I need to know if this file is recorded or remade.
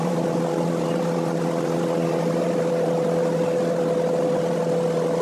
recorded